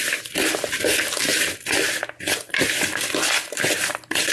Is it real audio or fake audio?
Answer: real